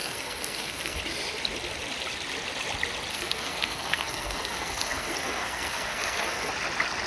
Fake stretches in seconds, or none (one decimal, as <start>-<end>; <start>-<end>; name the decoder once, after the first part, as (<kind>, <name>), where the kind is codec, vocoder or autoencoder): 0.0-1.0 (codec, SNAC); 3.1-6.5